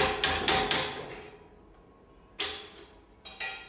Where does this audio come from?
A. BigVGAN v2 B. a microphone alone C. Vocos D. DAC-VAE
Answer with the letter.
B